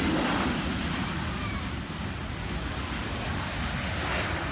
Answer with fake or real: real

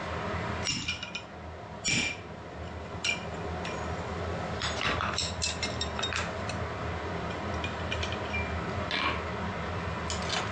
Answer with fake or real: real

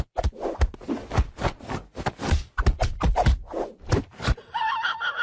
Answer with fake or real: real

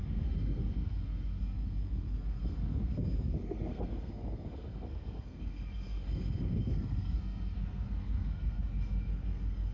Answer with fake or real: fake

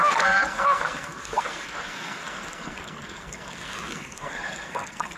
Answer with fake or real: fake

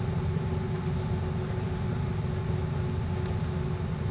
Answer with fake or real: real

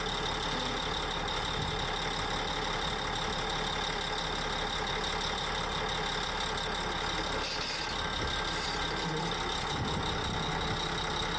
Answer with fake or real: real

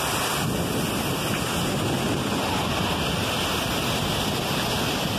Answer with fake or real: real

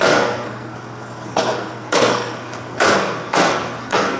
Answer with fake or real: fake